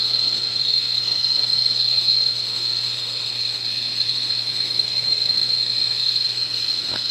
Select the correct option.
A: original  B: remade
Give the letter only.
B